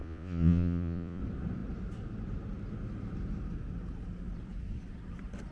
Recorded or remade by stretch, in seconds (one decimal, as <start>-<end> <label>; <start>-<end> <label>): 0.0-1.2 remade; 1.2-5.5 recorded